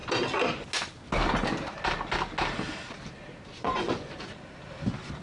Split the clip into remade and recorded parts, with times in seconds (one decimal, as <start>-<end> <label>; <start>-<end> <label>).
0.0-3.5 recorded; 3.5-4.1 remade; 4.1-5.2 recorded